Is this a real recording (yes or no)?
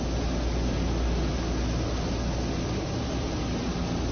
yes